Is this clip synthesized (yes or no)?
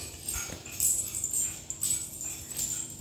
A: no